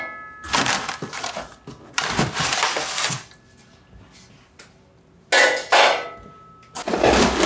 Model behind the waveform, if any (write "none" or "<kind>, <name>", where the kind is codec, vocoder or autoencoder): none